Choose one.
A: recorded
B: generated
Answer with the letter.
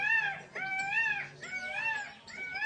A